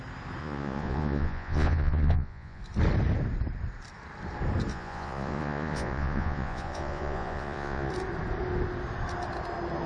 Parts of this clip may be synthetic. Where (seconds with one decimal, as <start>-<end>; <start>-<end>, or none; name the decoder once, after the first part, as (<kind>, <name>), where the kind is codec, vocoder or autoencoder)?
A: 0.4-2.6 (vocoder, Vocos); 4.7-7.9